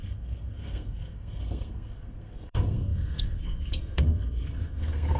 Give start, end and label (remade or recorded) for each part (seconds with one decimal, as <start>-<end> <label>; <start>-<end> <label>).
0.0-5.2 remade